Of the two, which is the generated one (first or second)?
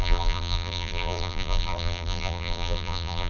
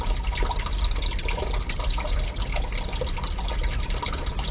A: first